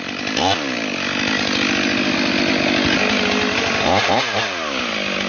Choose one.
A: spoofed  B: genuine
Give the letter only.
B